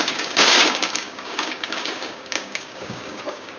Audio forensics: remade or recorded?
remade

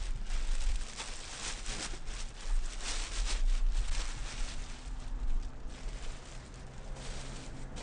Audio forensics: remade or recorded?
recorded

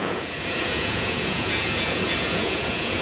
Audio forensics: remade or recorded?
remade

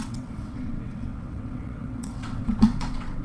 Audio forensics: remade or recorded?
remade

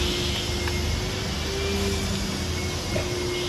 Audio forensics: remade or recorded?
recorded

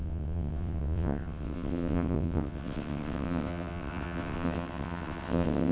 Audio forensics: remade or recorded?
remade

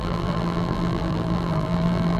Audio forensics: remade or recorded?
remade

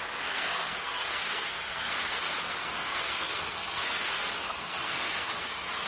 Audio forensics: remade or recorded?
remade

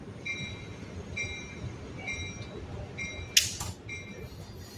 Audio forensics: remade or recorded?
recorded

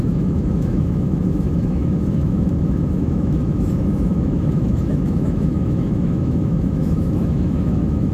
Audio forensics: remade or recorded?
remade